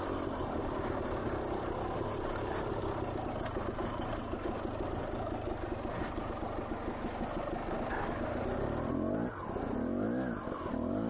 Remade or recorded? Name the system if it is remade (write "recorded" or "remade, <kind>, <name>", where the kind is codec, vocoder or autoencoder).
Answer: recorded